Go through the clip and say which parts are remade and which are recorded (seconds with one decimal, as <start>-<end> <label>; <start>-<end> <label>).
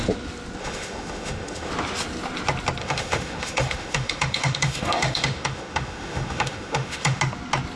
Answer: 0.0-0.6 recorded; 0.6-1.7 remade; 1.7-2.8 recorded; 2.8-7.2 remade; 7.2-7.8 recorded